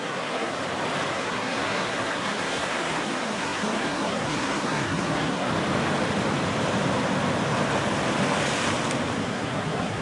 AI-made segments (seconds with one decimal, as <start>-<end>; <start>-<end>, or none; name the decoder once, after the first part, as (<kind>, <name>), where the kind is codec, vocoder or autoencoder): 0.0-0.6 (codec, SNAC); 1.1-5.5; 9.2-10.0